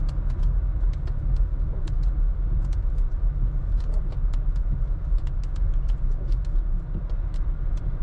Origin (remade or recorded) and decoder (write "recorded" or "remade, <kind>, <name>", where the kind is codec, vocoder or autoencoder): recorded